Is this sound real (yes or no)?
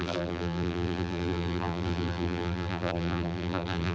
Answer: no